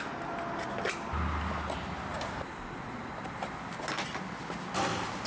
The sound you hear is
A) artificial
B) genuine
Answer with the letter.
B